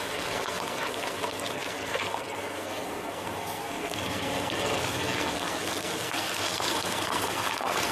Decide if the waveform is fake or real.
fake